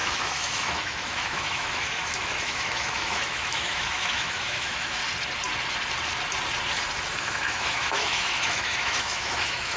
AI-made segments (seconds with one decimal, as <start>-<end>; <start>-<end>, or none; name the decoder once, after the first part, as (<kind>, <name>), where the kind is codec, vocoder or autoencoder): 0.0-5.0 (autoencoder, DAC-VAE); 7.2-9.8